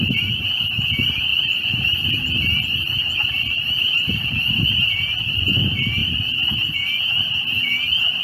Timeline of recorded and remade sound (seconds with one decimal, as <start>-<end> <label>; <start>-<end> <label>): 0.0-6.0 remade; 6.0-8.2 recorded